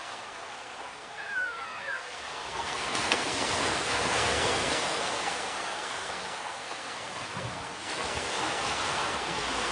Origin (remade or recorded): remade